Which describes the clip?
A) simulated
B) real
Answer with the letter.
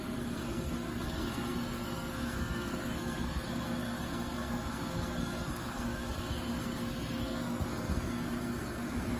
A